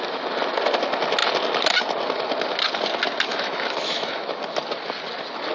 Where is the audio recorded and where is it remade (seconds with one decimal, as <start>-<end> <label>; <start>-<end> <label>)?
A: 0.0-3.3 recorded; 3.3-4.4 remade; 4.4-5.5 recorded